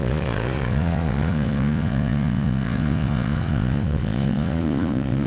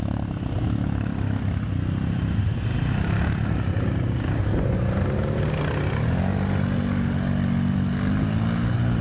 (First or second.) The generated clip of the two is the first